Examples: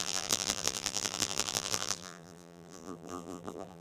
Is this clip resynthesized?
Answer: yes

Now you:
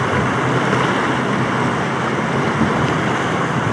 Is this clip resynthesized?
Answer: no